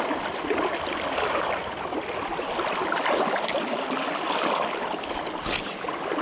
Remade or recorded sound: recorded